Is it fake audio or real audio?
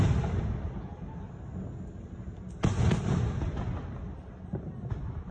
real